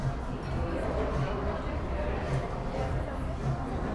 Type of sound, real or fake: real